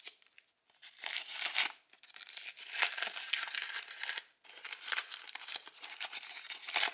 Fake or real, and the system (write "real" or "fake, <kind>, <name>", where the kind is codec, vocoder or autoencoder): real